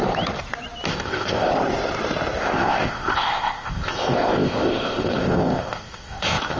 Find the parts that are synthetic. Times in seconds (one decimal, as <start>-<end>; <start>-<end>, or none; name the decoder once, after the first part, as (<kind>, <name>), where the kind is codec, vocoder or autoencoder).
0.9-1.5 (codec, ZipCodec); 2.4-6.6